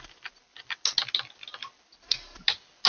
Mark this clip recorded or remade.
recorded